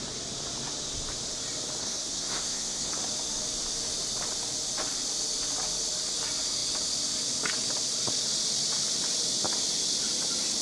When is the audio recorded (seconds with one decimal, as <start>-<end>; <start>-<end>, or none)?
0.0-1.8; 2.9-10.6